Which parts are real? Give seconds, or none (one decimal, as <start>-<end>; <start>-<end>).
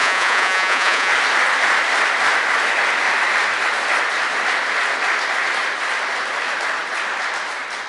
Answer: 1.1-7.9